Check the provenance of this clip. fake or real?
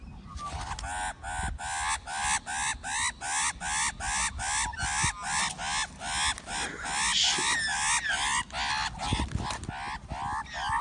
real